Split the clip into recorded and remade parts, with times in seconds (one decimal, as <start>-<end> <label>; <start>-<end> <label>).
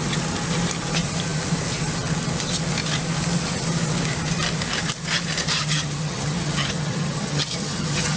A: 0.0-5.6 recorded; 5.6-8.2 remade